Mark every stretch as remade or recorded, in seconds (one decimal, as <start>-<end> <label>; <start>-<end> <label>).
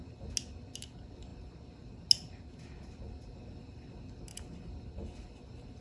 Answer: 0.0-5.8 recorded